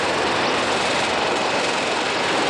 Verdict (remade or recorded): recorded